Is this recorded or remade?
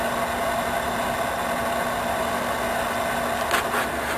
recorded